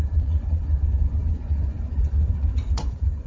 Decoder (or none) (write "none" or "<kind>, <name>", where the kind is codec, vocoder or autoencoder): vocoder, Vocos